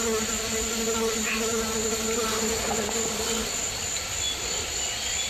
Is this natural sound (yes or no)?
yes